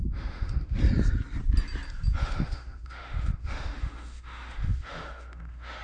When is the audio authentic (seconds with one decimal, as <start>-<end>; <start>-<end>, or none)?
0.8-2.2